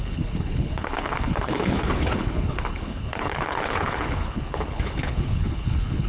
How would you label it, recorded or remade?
remade